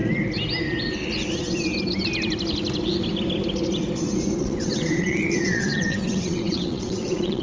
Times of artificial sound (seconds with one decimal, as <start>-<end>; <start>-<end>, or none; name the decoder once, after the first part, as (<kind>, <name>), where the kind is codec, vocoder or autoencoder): 4.4-7.4 (vocoder, WaveNeXt)